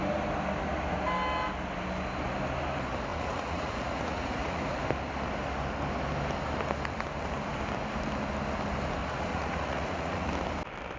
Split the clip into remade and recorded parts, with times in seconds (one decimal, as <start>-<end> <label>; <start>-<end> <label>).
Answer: 0.0-3.1 recorded; 3.1-4.6 remade; 4.6-9.0 recorded; 9.0-10.3 remade; 10.3-11.0 recorded